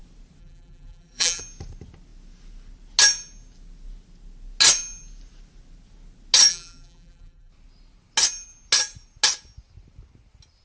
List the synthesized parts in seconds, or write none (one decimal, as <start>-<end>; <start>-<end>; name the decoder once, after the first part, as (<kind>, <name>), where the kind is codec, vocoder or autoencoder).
0.4-1.4 (vocoder, BigVGAN v2); 6.5-7.5